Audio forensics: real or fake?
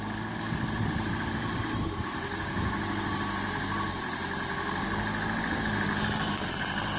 real